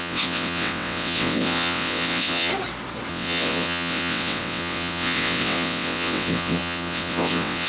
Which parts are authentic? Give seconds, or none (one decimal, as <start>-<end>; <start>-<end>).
2.5-3.1